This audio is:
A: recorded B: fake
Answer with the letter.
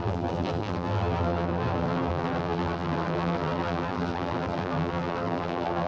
B